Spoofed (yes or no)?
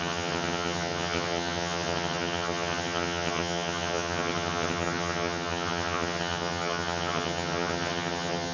yes